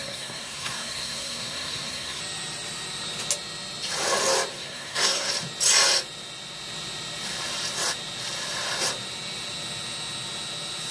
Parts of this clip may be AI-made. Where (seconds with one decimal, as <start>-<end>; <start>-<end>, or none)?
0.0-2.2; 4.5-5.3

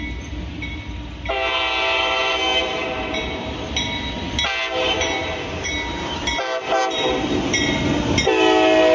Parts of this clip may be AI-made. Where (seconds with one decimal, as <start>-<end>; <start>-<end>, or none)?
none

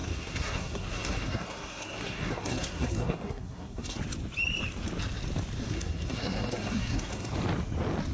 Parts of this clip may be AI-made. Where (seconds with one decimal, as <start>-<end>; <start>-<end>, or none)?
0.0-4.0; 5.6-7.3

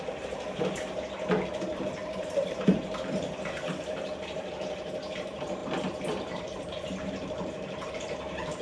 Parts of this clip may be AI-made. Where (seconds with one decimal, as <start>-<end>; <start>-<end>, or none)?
0.0-8.6

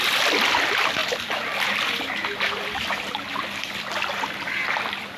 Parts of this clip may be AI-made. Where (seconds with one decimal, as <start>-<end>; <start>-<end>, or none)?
1.0-4.1